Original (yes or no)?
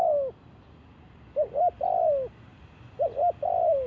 yes